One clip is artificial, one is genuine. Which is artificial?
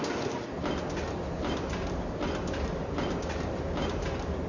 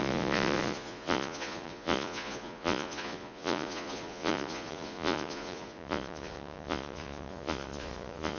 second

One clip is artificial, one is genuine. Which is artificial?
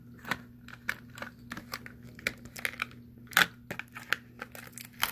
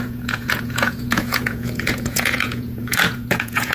second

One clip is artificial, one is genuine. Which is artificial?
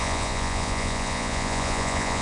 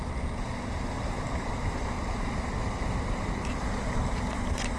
first